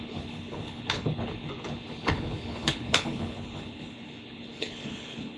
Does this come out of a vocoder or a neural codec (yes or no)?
yes